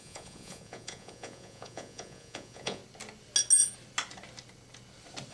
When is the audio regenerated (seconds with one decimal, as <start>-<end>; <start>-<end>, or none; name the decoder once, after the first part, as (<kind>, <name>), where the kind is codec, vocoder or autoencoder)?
0.0-2.8 (vocoder, Vocos)

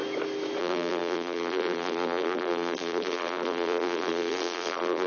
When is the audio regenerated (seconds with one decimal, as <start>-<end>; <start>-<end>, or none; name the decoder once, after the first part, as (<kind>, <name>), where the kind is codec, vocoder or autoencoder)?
0.6-5.1 (vocoder, BigVGAN v2)

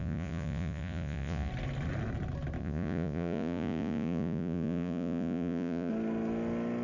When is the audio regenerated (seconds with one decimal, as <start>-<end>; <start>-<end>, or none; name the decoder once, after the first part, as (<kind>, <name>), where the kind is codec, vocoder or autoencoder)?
0.0-1.5 (vocoder, Vocos); 2.6-5.9

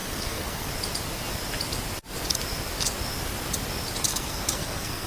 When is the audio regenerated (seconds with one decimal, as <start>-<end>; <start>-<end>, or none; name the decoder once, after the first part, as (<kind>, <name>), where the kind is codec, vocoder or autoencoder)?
0.0-0.7 (codec, SNAC); 4.1-5.1